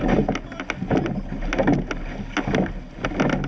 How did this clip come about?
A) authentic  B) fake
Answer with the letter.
A